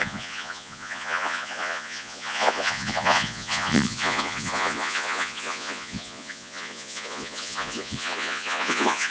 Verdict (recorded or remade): remade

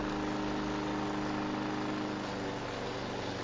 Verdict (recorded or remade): recorded